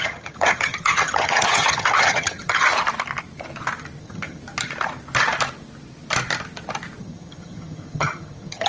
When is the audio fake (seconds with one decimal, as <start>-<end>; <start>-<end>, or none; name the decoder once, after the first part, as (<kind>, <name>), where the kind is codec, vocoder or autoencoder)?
0.0-2.7 (vocoder, HiFi-GAN); 4.0-4.4; 7.0-8.7